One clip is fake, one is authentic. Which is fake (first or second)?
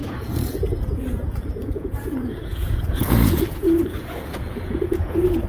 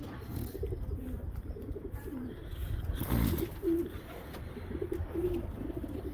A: first